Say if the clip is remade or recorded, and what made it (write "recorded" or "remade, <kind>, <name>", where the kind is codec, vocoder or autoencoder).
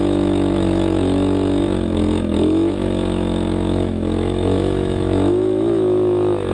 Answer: remade, autoencoder, DAC-VAE